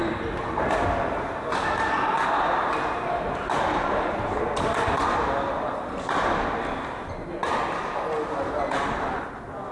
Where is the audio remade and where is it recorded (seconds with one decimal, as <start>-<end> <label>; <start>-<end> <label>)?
0.0-9.7 recorded